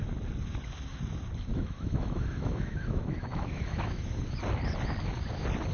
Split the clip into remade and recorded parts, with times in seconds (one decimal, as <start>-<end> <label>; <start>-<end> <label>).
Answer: 0.0-1.5 recorded; 1.5-4.1 remade; 4.1-5.7 recorded